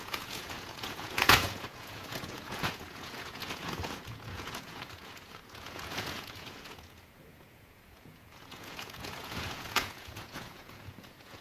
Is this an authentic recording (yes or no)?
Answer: no